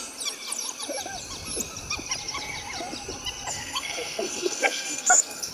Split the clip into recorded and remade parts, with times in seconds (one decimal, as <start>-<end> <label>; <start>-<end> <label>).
0.0-3.5 recorded; 3.5-5.5 remade